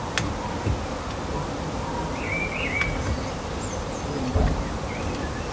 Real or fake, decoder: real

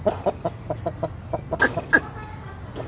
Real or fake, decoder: real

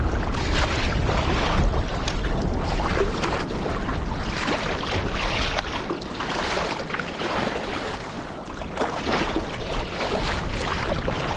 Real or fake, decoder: real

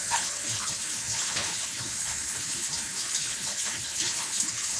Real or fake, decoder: fake, codec, HILCodec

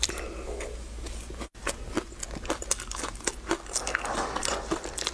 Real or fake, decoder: real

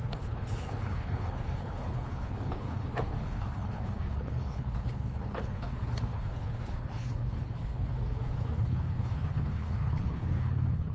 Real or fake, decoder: fake, codec, HILCodec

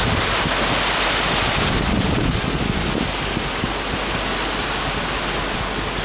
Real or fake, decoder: real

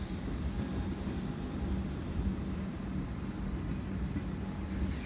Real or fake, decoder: real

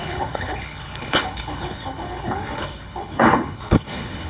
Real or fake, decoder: fake, codec, HILCodec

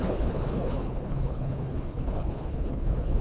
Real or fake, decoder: fake, codec, HILCodec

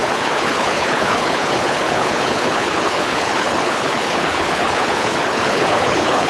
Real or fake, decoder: fake, codec, HILCodec